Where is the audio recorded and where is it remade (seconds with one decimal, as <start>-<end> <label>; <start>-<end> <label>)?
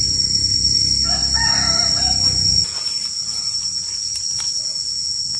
0.0-5.4 recorded